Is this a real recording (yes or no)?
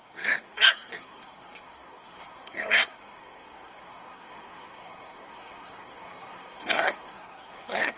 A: no